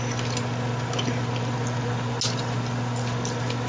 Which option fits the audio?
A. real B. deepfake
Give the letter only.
A